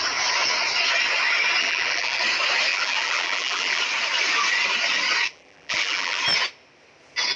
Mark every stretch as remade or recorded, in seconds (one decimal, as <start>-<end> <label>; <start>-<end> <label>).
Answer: 0.0-1.6 recorded; 1.6-2.2 remade; 2.2-2.7 recorded; 2.7-3.8 remade; 3.8-5.3 recorded; 5.3-6.2 remade; 6.2-7.4 recorded